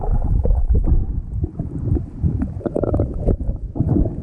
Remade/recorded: remade